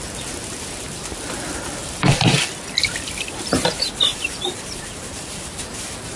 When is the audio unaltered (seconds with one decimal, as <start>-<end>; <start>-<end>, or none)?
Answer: 0.0-1.8; 2.5-4.1; 5.6-6.2